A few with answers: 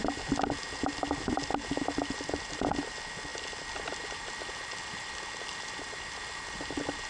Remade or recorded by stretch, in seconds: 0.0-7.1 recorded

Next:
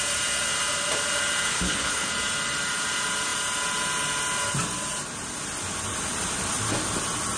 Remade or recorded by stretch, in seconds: 0.0-1.5 recorded; 1.5-2.1 remade; 2.1-7.4 recorded

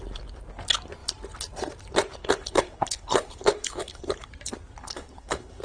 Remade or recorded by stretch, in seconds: 0.0-2.2 recorded; 2.2-4.3 remade; 4.3-4.8 recorded; 4.8-5.6 remade

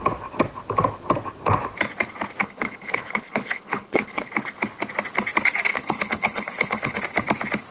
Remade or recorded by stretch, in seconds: 0.0-2.4 recorded; 2.4-4.3 remade; 4.3-5.7 recorded; 5.7-7.0 remade; 7.0-7.7 recorded

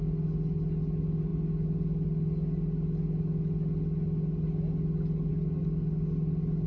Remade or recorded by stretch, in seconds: 0.0-6.7 recorded